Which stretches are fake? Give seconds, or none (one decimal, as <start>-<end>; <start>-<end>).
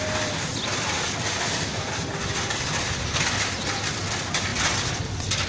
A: none